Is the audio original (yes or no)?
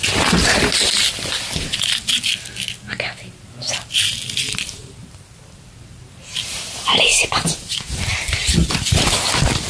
yes